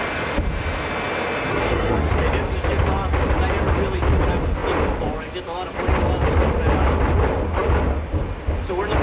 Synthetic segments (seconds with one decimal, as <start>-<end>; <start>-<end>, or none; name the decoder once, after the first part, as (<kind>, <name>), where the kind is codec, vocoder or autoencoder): 1.5-2.1 (codec, SNAC)